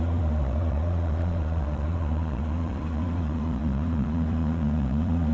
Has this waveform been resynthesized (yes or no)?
yes